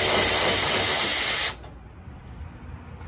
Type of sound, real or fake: real